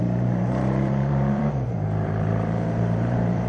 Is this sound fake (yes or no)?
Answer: yes